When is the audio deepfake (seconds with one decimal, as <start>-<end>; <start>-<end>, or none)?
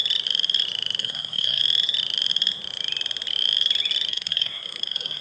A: 1.0-1.6; 4.1-5.2